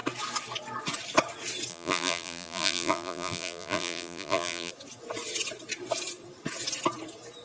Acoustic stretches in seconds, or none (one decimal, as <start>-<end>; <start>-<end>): 0.0-1.7; 4.7-7.4